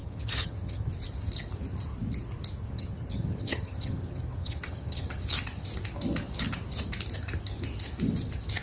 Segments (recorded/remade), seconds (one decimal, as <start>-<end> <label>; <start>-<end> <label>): 0.0-0.9 remade; 0.9-2.6 recorded; 2.6-5.2 remade; 5.2-8.6 recorded